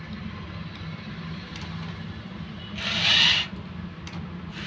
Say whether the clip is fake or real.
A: real